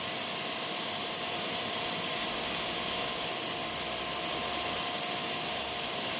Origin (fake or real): real